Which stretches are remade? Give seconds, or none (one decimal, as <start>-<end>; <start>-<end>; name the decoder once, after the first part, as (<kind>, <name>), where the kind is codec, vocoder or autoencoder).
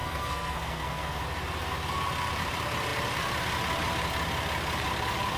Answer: 0.0-1.2 (codec, SNAC)